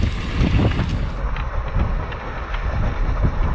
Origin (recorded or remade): recorded